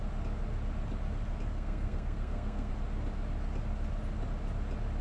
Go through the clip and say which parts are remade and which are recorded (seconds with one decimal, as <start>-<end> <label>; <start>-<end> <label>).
0.0-1.5 recorded; 1.5-2.7 remade; 2.7-5.0 recorded